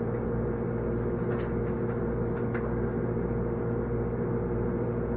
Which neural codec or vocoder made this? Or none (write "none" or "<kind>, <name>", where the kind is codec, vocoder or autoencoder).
none